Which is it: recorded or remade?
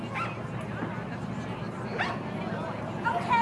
recorded